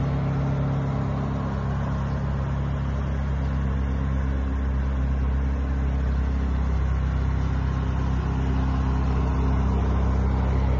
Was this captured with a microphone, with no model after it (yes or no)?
yes